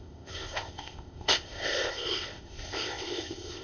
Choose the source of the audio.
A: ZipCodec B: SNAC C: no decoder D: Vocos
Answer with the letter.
A